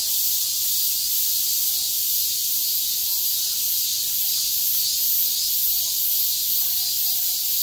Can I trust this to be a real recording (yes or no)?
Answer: yes